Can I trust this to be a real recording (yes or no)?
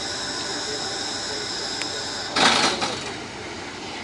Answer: yes